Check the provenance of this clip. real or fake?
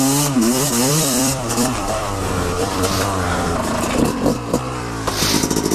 fake